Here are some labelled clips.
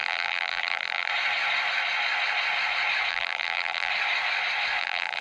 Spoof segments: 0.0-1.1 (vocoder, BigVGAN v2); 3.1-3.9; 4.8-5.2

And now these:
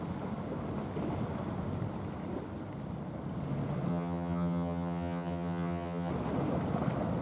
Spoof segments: 3.9-6.1 (vocoder, HiFi-GAN)

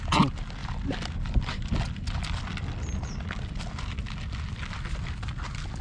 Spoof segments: none

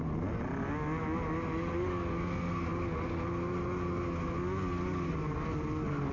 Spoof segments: none